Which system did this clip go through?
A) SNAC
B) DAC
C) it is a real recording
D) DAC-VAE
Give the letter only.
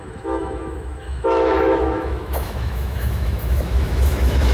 D